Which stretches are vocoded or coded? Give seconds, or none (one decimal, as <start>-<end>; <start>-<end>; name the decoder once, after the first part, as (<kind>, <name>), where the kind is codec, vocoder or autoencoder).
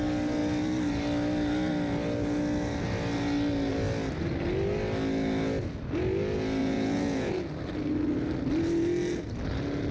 6.6-7.3 (vocoder, Vocos)